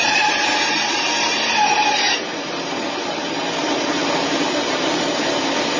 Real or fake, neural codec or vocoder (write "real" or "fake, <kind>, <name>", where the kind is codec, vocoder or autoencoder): fake, vocoder, BigVGAN v2